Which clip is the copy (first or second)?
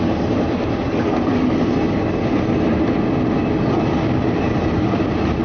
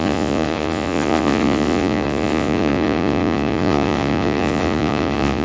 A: second